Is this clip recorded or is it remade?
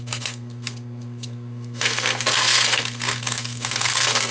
remade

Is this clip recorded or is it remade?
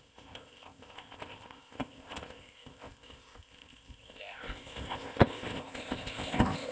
remade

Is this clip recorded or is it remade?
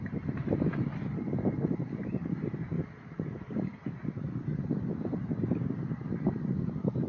remade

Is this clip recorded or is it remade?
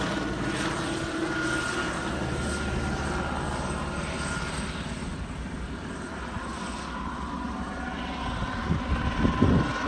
recorded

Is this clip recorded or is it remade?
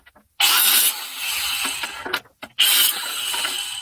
recorded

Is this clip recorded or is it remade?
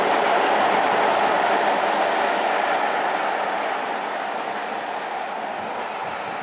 recorded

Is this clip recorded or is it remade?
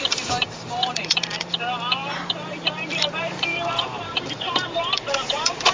remade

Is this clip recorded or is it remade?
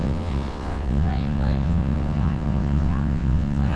remade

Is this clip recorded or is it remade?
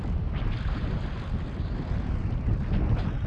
recorded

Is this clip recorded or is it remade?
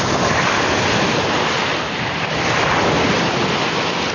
recorded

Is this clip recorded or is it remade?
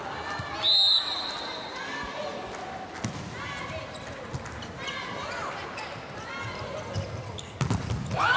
recorded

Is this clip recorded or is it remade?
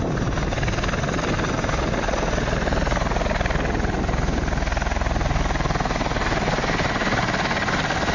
recorded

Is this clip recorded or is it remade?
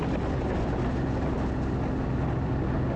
recorded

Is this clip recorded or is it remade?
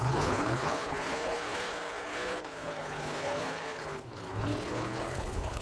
remade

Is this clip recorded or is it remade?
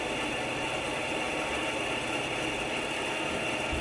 recorded